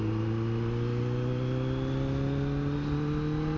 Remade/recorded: recorded